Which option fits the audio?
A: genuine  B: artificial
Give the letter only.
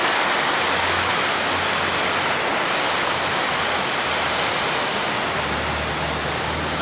A